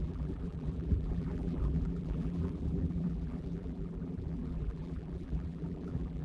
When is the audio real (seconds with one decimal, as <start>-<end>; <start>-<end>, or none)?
none